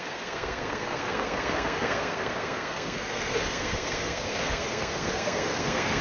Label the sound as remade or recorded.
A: remade